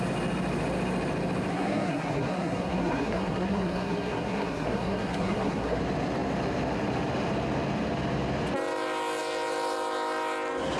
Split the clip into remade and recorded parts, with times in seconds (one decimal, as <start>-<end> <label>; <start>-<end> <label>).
0.0-1.5 recorded; 1.5-5.8 remade; 5.8-10.8 recorded